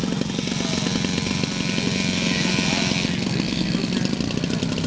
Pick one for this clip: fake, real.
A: real